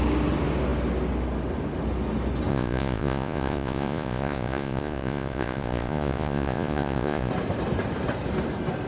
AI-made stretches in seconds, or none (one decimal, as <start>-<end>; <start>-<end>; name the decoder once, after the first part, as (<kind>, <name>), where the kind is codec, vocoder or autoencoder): 2.5-7.3 (vocoder, Vocos)

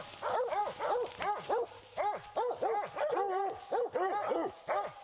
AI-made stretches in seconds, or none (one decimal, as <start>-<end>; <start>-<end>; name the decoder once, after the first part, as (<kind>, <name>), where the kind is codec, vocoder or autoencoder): none